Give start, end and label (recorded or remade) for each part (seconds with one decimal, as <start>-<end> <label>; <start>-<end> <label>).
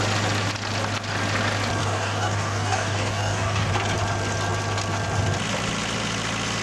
0.0-1.8 recorded; 1.8-3.7 remade; 3.7-6.6 recorded